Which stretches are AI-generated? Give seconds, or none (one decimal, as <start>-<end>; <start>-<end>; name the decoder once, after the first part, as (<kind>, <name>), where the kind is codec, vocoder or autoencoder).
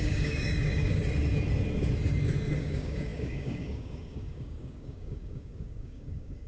0.0-1.0 (codec, DAC); 2.6-6.5